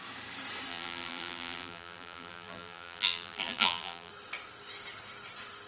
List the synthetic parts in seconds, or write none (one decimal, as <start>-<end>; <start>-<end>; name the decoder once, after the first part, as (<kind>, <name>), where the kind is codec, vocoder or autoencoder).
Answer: 0.7-4.1 (vocoder, BigVGAN v2)